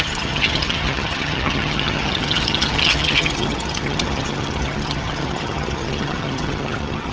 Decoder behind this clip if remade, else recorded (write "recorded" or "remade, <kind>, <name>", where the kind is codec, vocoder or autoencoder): remade, vocoder, HiFi-GAN